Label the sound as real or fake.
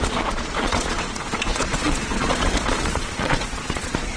fake